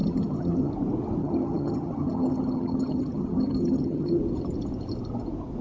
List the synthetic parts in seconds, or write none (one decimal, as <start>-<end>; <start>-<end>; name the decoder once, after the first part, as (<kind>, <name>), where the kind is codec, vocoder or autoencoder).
0.0-0.7 (vocoder, HiFi-GAN); 1.2-4.2